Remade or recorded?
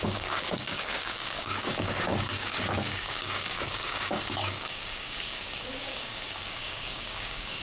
remade